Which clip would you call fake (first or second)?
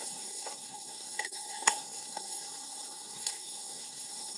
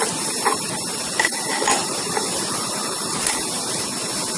first